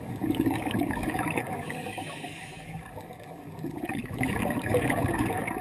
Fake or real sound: fake